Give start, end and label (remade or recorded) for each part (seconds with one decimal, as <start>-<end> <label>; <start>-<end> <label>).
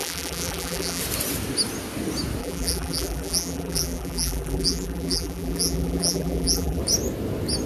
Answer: 0.0-1.0 remade; 1.0-2.4 recorded; 2.4-6.8 remade; 6.8-7.7 recorded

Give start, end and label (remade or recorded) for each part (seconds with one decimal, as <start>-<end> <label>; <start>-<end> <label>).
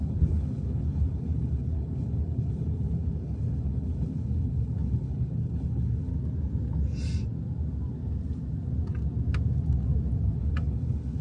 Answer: 0.0-6.1 remade; 6.1-10.4 recorded; 10.4-11.2 remade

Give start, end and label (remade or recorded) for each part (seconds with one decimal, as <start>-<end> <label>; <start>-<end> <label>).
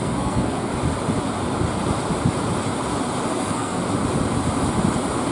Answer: 0.0-0.7 remade; 0.7-3.3 recorded; 3.3-3.8 remade; 3.8-5.3 recorded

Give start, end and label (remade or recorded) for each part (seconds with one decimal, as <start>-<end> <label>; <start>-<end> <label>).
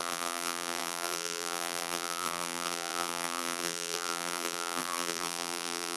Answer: 0.0-6.0 remade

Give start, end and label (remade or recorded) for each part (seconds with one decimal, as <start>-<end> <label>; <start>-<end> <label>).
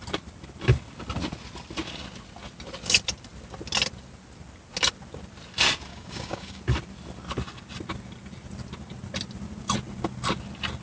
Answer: 0.0-5.9 recorded; 5.9-6.6 remade; 6.6-10.8 recorded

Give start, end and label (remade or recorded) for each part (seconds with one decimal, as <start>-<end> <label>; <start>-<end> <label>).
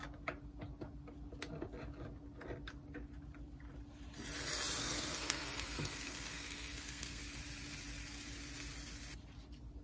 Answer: 0.0-4.8 recorded; 4.8-7.2 remade; 7.2-9.8 recorded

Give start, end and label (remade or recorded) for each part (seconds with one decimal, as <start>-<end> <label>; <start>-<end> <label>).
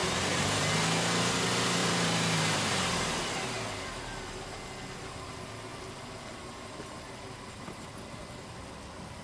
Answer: 0.0-0.7 remade; 0.7-1.8 recorded; 1.8-3.2 remade; 3.2-9.2 recorded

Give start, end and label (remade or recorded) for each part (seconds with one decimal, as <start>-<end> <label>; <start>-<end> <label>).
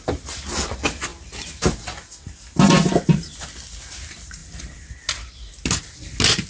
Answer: 0.0-6.5 recorded